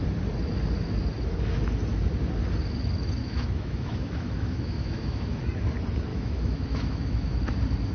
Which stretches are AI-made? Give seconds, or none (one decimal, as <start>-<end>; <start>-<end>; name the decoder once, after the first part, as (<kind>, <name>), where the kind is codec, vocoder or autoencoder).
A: 3.2-5.4 (autoencoder, DAC-VAE); 6.1-7.4